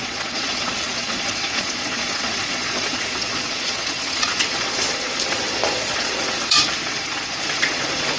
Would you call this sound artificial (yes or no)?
yes